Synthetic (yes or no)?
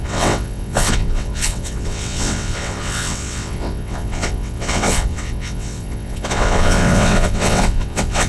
yes